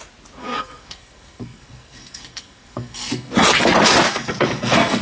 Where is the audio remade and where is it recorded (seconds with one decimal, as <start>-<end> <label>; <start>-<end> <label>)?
0.0-0.4 recorded; 0.4-3.3 remade; 3.3-4.1 recorded; 4.1-5.0 remade